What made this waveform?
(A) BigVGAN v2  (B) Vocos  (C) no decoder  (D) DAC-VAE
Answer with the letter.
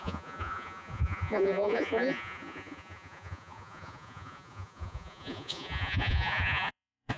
B